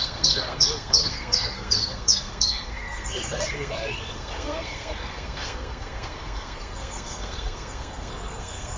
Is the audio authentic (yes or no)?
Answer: no